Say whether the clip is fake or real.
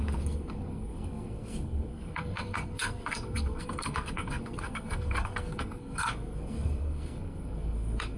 fake